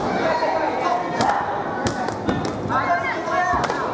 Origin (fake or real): real